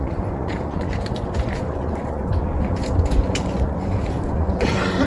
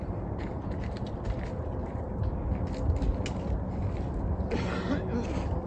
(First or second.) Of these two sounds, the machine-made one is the first